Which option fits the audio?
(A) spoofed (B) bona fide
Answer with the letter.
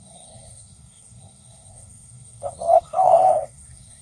A